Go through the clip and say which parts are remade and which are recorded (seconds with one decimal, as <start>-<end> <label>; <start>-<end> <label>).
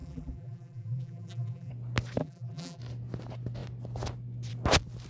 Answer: 0.0-1.7 remade; 1.7-2.2 recorded; 2.2-2.8 remade; 2.8-5.1 recorded